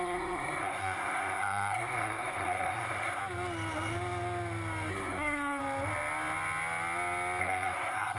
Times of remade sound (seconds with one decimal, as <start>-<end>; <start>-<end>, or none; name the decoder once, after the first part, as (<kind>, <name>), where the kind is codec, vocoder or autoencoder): 0.0-3.2 (codec, SNAC); 4.9-5.6; 7.4-8.2